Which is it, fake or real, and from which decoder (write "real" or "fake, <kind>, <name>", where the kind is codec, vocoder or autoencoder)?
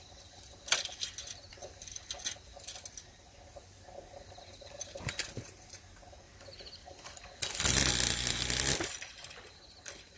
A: real